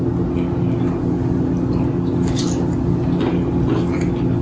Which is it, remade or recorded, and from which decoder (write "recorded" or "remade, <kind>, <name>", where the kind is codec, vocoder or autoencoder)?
recorded